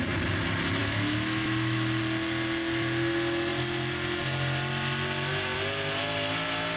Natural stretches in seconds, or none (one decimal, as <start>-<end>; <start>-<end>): 0.0-0.8; 2.0-6.8